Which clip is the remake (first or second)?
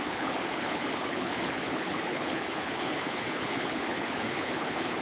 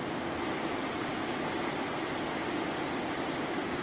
first